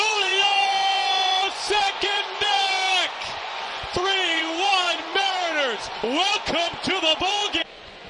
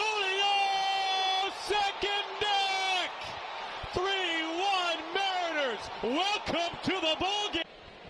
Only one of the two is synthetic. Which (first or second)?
first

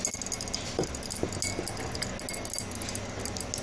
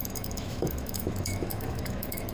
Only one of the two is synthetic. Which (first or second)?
second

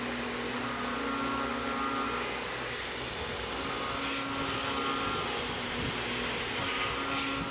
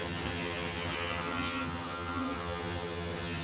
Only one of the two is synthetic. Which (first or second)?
second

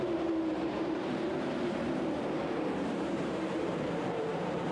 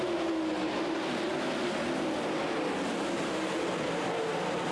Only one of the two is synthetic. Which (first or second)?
first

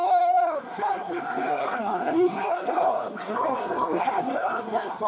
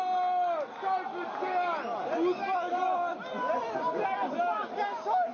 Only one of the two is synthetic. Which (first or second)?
first